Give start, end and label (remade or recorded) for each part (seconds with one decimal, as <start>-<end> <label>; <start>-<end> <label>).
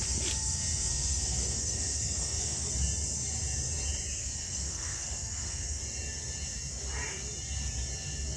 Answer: 0.0-0.9 recorded; 0.9-2.7 remade; 2.7-4.2 recorded; 4.2-5.8 remade; 5.8-8.4 recorded